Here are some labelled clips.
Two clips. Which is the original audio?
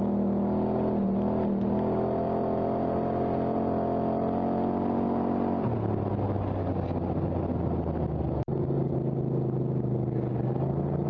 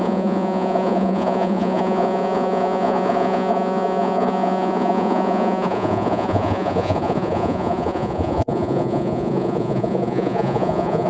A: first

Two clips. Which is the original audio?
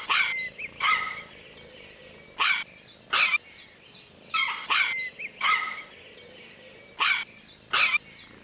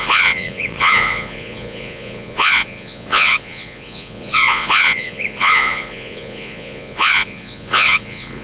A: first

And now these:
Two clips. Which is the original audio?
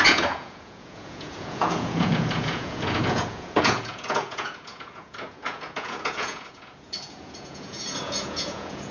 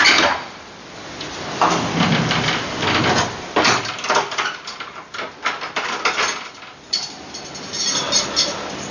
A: second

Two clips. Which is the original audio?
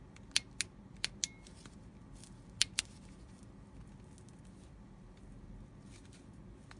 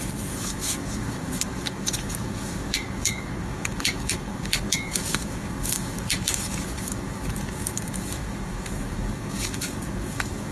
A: first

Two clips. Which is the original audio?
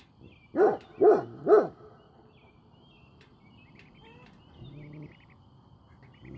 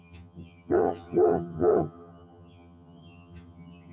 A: first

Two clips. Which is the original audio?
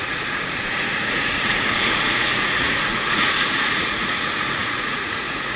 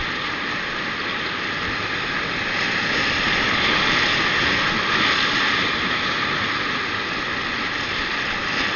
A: second